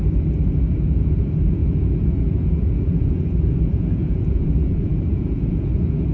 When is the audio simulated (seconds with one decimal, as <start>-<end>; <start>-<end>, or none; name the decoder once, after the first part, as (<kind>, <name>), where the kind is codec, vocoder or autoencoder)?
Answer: 0.7-6.1 (vocoder, Vocos)